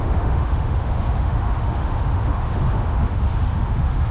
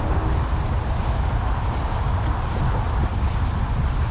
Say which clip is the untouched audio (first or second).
second